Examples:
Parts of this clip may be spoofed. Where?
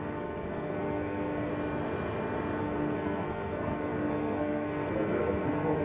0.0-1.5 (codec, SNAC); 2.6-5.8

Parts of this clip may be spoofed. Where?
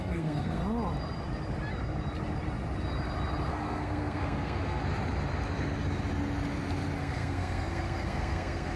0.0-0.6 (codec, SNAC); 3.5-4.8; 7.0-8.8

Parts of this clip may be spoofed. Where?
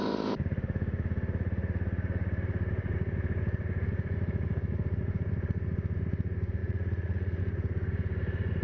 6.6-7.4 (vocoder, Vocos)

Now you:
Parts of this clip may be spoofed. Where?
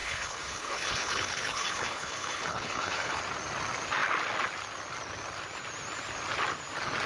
0.0-3.2 (codec, HILCodec)